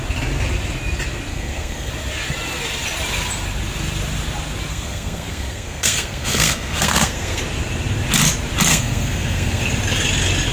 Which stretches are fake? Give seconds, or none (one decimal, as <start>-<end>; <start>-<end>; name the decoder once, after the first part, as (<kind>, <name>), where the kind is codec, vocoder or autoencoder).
1.3-1.9 (codec, SNAC); 4.7-7.4; 8.7-9.6